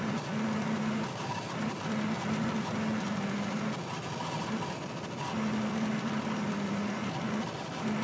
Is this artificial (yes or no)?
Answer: no